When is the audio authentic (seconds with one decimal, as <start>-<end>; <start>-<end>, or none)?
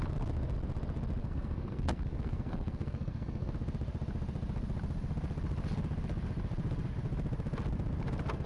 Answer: 0.0-1.2; 3.5-8.5